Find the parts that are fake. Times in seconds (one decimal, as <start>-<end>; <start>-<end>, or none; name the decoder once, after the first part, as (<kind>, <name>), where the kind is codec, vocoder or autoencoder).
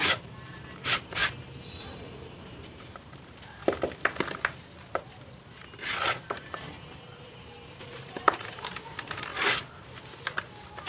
0.0-1.2 (vocoder, BigVGAN v2); 1.8-3.6; 6.2-9.3